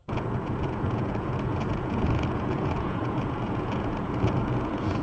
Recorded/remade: remade